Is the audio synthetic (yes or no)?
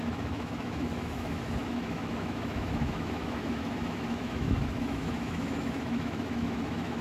yes